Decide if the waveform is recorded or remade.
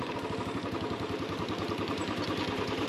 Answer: remade